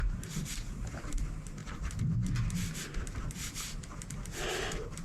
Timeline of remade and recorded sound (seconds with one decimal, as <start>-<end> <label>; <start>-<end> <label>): 0.0-1.6 remade; 1.6-4.6 recorded; 4.6-5.0 remade